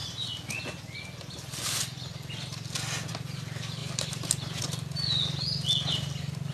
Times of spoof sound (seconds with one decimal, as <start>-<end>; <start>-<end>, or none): 3.8-4.6